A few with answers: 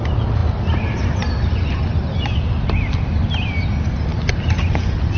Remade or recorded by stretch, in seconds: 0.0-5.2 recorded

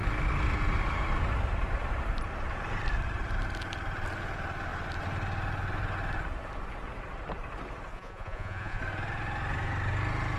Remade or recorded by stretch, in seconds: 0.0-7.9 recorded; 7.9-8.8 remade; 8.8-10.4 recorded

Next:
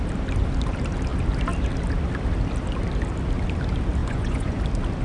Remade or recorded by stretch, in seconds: 0.0-4.0 recorded; 4.0-4.6 remade; 4.6-5.0 recorded

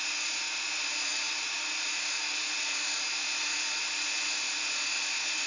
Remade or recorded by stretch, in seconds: 0.0-5.5 remade

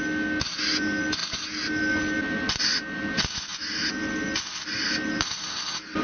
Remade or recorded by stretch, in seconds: 0.0-6.0 recorded

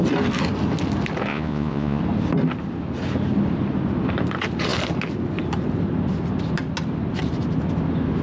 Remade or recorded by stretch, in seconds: 0.0-1.3 recorded; 1.3-2.0 remade; 2.0-8.2 recorded

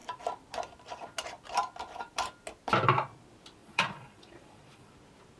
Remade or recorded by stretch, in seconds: 0.0-3.6 recorded; 3.6-4.9 remade; 4.9-5.4 recorded